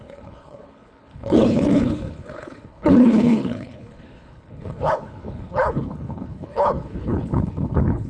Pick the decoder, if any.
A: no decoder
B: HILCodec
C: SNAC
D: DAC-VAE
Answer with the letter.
B